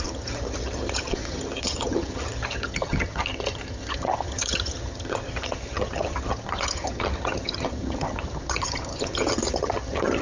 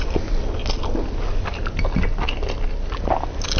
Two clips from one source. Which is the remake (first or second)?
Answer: first